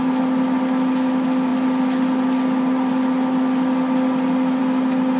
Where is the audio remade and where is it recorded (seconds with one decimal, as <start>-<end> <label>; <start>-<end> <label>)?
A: 0.0-5.2 recorded